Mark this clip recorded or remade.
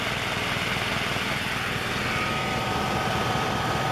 recorded